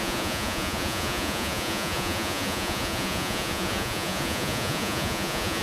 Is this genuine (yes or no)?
no